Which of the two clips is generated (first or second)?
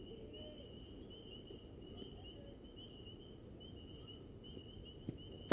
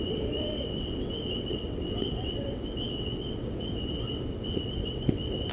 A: second